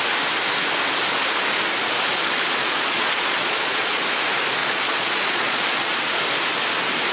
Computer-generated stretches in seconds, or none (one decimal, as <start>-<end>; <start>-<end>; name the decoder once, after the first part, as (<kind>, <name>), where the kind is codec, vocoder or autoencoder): 2.6-4.0 (vocoder, Vocos); 4.6-5.9